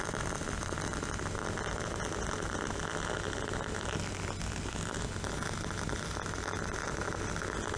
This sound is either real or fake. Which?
real